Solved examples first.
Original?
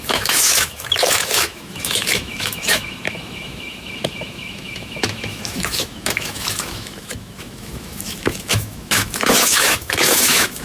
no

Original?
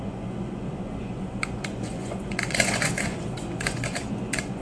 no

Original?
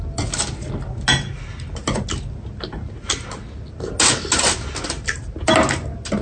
yes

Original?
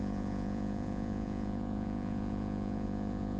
no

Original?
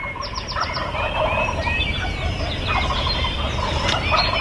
yes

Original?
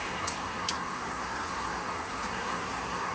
no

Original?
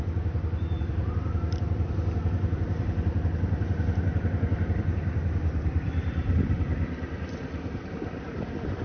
no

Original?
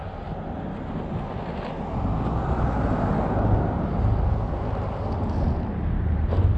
yes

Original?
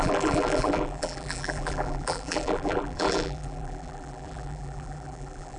no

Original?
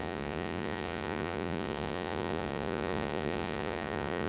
no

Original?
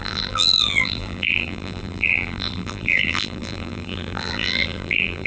no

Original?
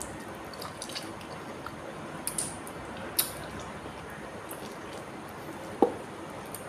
yes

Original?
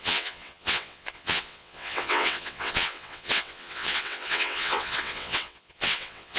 no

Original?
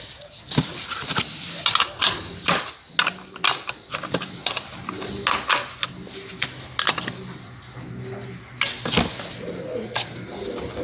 yes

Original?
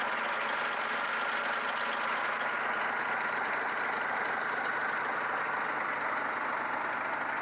yes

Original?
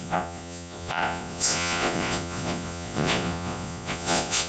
no